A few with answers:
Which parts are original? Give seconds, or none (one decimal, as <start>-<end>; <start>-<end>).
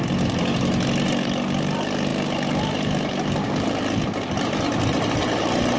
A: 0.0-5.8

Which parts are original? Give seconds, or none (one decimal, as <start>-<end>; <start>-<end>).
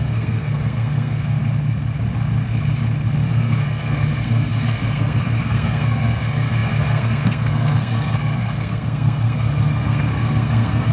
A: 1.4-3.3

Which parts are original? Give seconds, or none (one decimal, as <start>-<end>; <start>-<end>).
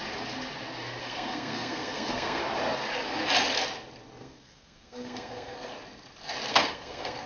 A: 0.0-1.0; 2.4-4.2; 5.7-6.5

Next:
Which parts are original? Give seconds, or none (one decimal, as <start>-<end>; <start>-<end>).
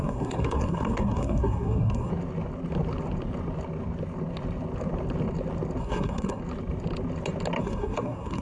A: 2.1-5.8; 6.4-7.6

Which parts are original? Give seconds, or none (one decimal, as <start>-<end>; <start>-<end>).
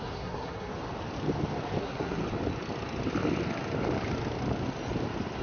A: 0.7-1.8; 2.2-5.4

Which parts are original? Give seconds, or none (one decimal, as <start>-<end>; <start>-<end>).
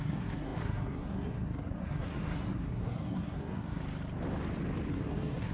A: 3.8-4.9